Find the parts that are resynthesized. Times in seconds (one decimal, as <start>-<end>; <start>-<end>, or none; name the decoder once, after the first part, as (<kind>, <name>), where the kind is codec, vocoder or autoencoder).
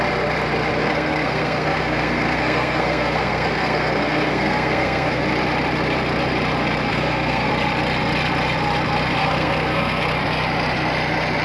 0.8-5.2 (codec, SNAC); 6.9-7.5; 9.2-10.0